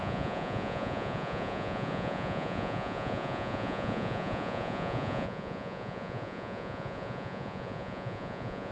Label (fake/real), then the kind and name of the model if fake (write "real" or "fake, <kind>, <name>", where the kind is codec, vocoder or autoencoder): fake, vocoder, Vocos